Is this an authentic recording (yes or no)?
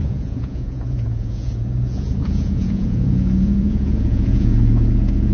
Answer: no